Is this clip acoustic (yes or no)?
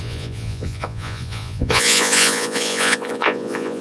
no